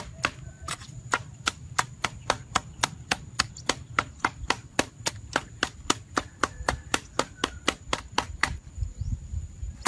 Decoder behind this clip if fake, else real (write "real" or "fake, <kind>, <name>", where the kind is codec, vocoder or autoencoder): fake, vocoder, BigVGAN v2